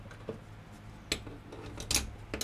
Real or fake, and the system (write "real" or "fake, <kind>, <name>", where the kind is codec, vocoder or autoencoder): real